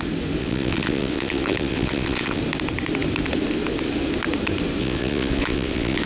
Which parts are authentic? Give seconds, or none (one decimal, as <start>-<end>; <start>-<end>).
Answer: 0.0-0.4; 2.4-4.8